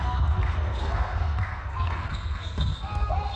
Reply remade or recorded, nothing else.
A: remade